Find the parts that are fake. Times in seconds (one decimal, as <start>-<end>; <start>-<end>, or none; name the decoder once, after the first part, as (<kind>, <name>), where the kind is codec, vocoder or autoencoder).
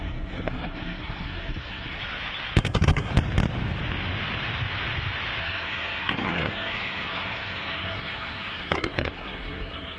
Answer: 0.0-2.0 (codec, SNAC); 2.6-3.1; 5.4-10.0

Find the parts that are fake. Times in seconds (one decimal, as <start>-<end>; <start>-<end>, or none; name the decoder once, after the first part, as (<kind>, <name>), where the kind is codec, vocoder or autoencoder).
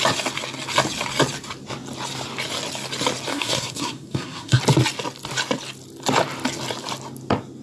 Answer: 3.3-4.6 (codec, SNAC)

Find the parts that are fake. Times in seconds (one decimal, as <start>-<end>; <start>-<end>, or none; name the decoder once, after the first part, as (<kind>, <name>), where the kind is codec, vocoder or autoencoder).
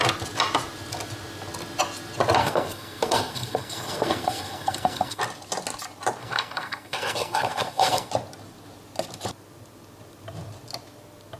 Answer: 2.4-5.2 (codec, SNAC); 6.2-8.1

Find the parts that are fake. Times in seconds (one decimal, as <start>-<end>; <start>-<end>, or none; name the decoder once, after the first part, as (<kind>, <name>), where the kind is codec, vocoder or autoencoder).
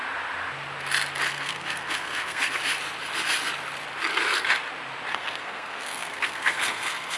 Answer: 1.3-2.6 (codec, SNAC); 5.1-7.2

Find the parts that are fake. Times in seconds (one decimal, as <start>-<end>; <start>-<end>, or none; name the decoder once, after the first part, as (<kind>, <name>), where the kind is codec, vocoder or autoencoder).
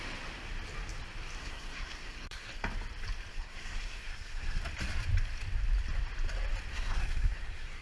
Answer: 1.4-2.5 (codec, SNAC); 3.3-4.6; 6.7-7.8